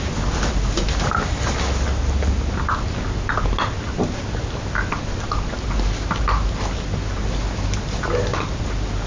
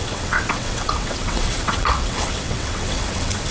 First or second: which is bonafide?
first